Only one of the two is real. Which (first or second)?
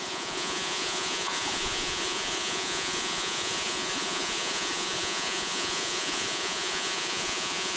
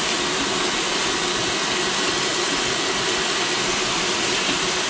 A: second